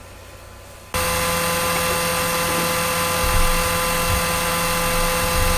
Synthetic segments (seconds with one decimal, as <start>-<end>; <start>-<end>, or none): none